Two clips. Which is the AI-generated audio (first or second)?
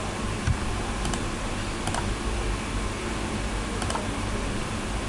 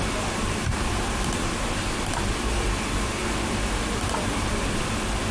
second